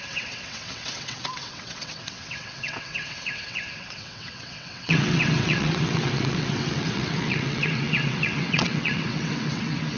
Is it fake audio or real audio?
fake